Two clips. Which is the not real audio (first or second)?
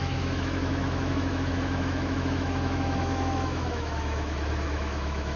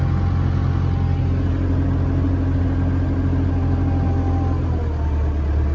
first